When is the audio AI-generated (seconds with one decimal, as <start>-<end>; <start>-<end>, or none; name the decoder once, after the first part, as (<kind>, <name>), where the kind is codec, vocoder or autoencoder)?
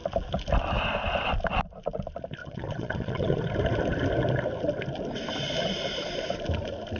2.4-3.4 (vocoder, Vocos)